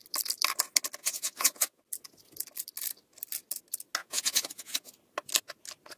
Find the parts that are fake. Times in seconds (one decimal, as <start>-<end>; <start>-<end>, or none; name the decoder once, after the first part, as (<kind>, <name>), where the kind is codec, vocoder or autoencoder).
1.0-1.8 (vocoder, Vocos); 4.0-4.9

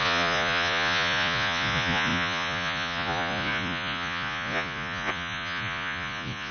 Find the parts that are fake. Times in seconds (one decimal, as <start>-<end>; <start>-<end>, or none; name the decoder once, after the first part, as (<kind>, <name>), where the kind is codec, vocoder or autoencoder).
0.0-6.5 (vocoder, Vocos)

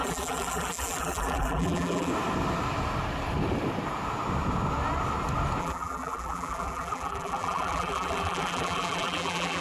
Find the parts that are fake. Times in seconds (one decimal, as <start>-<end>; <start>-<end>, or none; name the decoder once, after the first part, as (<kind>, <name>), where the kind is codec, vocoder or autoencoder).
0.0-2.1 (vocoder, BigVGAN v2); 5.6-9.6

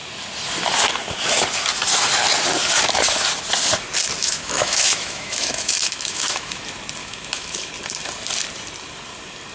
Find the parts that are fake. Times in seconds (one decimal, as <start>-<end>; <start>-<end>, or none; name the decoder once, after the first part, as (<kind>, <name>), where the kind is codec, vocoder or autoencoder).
4.2-6.6 (autoencoder, DAC-VAE); 7.0-7.7

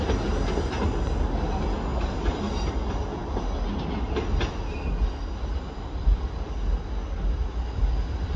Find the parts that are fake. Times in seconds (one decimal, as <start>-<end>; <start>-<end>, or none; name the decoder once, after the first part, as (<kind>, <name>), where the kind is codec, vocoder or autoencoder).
none

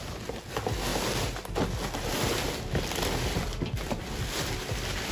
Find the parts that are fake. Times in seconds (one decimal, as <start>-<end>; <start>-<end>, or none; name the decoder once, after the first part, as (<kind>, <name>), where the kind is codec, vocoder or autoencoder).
none